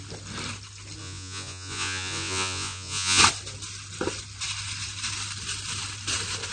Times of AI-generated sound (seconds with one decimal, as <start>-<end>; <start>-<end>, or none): 1.0-3.2